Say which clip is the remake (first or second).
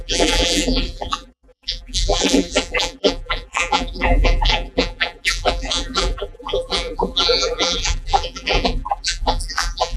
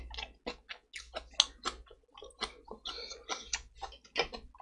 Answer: first